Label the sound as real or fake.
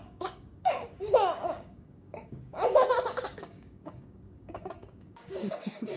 fake